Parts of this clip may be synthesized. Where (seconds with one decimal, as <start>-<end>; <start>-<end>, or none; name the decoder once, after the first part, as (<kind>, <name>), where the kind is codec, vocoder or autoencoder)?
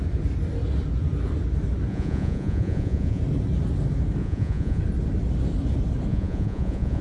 1.9-3.2 (vocoder, Vocos); 4.2-4.8; 6.1-7.0